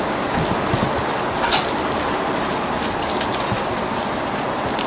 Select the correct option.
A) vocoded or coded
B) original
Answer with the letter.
B